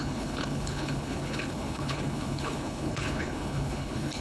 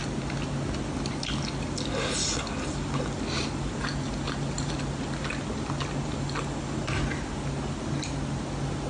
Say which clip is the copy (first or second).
first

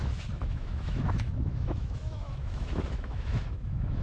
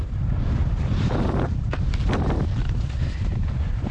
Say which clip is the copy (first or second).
first